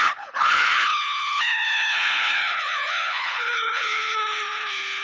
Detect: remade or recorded remade